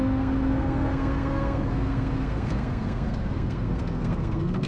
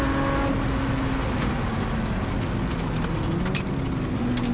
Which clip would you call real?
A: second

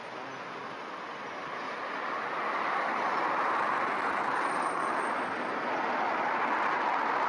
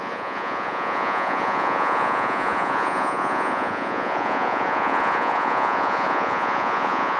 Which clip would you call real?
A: first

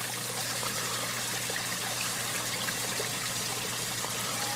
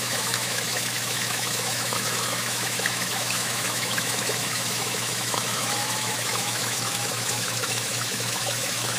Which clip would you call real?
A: first